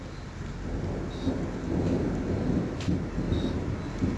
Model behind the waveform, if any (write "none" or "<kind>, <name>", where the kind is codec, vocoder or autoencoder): none